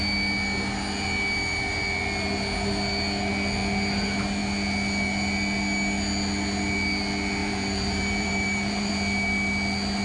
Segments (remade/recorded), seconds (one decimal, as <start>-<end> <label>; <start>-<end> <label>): 0.0-7.4 recorded; 7.4-8.9 remade; 8.9-10.0 recorded